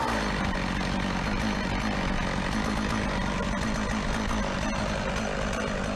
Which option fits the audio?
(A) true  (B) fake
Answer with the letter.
A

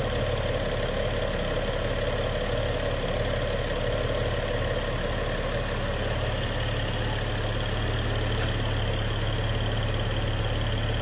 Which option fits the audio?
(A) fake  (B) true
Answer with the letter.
B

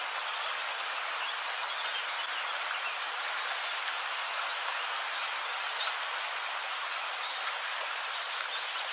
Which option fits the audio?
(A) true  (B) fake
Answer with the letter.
A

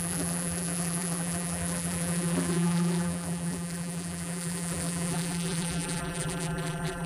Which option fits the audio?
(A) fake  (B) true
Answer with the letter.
A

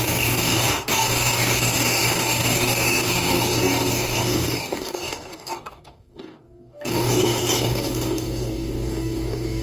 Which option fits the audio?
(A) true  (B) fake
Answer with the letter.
B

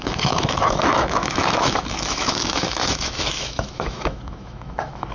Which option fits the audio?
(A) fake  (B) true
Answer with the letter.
A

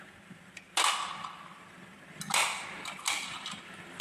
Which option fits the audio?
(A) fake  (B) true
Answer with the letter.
B